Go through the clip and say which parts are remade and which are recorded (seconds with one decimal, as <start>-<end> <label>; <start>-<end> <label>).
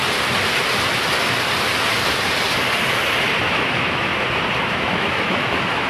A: 0.0-3.5 recorded; 3.5-4.1 remade; 4.1-4.7 recorded; 4.7-5.9 remade